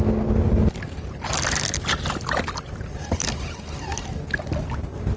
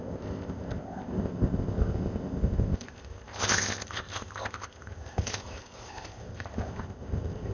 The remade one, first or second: second